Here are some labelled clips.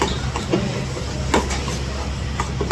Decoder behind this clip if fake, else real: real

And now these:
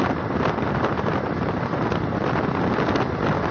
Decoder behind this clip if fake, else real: real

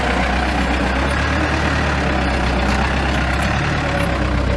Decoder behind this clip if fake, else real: real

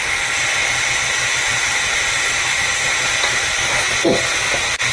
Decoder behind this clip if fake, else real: real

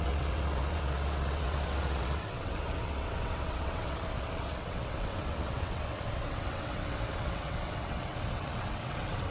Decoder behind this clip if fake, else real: fake, vocoder, WaveNeXt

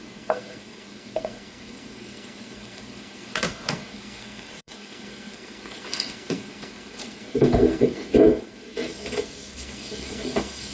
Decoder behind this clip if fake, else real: fake, codec, SNAC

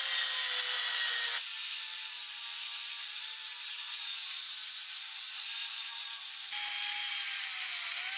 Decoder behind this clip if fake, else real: real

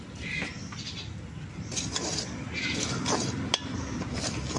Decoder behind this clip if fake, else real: real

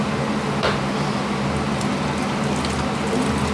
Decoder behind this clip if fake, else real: real